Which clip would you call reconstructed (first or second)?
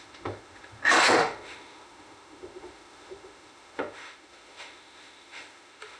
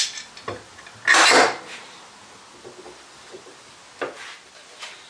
first